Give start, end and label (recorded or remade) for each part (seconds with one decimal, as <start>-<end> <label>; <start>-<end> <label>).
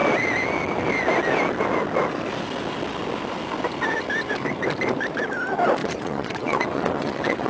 0.0-5.8 recorded; 5.8-7.5 remade